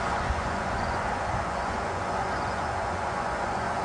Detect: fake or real fake